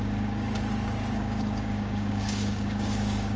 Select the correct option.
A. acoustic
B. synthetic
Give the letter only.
B